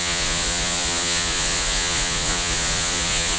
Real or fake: fake